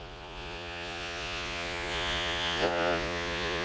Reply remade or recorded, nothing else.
remade